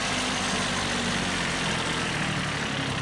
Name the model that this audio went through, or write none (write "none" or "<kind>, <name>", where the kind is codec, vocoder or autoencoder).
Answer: none